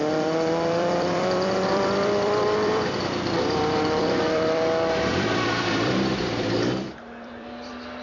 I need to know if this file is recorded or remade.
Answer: remade